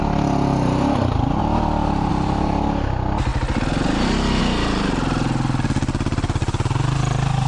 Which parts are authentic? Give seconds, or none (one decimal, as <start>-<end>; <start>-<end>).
0.0-3.3; 4.4-7.5